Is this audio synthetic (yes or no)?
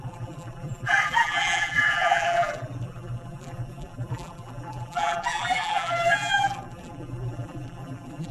yes